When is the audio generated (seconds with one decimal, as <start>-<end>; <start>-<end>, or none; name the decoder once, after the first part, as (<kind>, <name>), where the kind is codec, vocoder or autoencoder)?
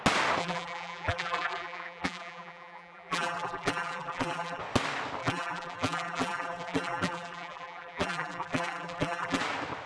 0.4-4.6 (vocoder, BigVGAN v2); 5.2-9.4